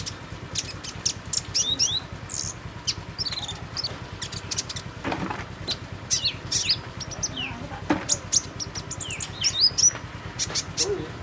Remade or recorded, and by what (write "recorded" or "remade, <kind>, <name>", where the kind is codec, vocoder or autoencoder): recorded